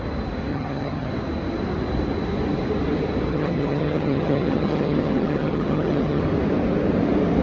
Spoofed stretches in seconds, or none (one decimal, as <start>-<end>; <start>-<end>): 0.5-1.1; 3.3-6.2